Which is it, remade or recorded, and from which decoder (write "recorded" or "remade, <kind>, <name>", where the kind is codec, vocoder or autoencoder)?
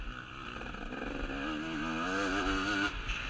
recorded